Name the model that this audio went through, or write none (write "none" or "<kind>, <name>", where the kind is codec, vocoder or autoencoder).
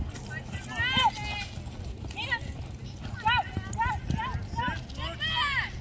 none